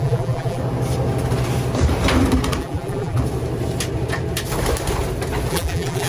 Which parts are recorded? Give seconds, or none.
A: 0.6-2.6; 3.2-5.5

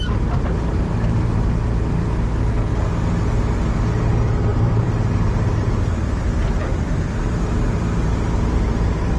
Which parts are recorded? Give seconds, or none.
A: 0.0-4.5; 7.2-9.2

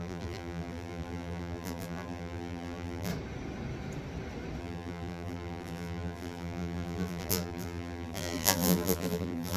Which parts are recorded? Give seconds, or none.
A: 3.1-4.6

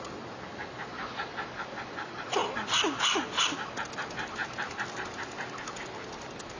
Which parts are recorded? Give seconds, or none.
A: 0.0-6.6

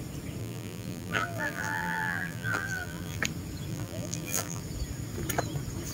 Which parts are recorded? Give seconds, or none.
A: 0.0-0.4; 3.2-3.7; 4.6-5.9

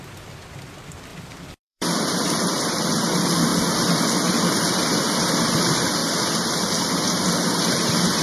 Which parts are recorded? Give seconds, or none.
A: 0.0-1.1; 2.7-8.2

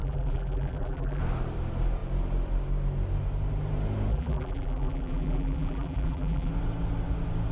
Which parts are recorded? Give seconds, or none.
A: 1.2-4.1; 6.5-7.5